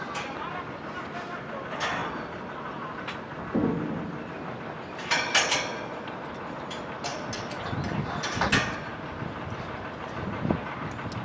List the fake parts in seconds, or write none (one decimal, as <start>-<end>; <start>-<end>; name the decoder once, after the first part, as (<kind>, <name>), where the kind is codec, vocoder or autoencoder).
none